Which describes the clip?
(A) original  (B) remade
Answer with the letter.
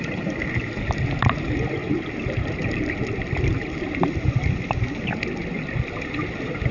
A